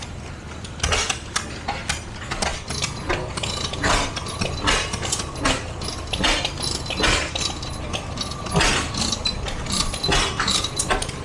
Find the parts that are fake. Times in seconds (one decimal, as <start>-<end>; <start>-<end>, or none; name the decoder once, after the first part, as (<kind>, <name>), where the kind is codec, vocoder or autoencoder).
none